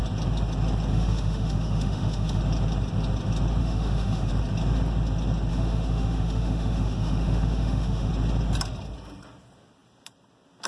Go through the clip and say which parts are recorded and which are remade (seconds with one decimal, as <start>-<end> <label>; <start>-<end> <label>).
0.0-0.9 recorded; 0.9-2.4 remade; 2.4-3.6 recorded; 3.6-4.3 remade; 4.3-5.5 recorded; 5.5-8.1 remade; 8.1-10.7 recorded